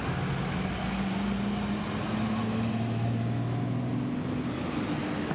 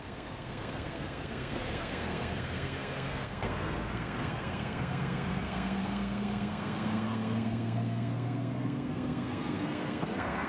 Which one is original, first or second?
first